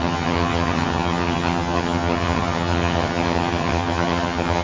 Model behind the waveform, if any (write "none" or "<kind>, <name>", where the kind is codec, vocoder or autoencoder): vocoder, HiFi-GAN